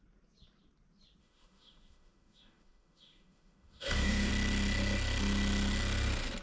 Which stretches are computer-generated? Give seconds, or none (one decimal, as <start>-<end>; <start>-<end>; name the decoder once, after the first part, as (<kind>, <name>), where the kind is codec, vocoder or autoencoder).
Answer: 1.2-4.3 (autoencoder, DAC-VAE)